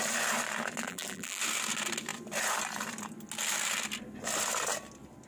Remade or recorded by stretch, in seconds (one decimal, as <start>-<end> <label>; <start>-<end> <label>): 0.0-0.8 recorded; 0.8-1.4 remade; 1.4-5.3 recorded